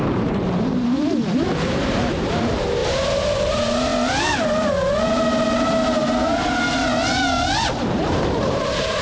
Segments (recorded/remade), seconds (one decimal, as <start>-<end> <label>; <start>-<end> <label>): 0.0-3.9 remade; 3.9-7.8 recorded; 7.8-9.0 remade